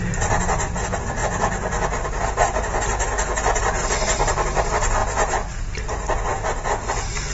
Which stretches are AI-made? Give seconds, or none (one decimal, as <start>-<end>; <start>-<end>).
none